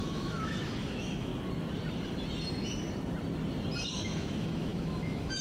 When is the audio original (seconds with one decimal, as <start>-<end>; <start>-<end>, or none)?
1.3-3.9